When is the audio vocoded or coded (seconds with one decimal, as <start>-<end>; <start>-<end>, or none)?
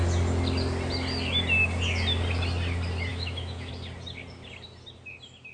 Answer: 3.1-3.7